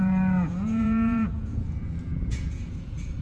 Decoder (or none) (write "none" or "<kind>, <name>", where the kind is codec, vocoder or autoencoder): vocoder, Vocos